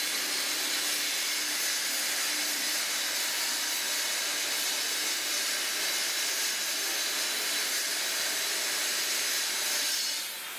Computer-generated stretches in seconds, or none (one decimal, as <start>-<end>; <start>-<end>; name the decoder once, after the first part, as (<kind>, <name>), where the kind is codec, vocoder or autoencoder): none